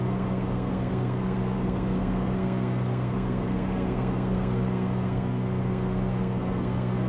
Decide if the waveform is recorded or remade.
remade